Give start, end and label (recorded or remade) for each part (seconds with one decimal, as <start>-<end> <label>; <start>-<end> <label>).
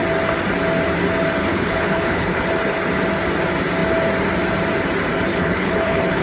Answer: 0.0-1.4 recorded; 1.4-2.5 remade; 2.5-5.3 recorded; 5.3-6.2 remade